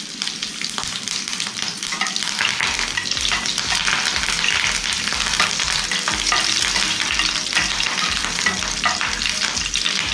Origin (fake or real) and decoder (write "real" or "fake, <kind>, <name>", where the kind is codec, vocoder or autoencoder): fake, vocoder, BigVGAN v2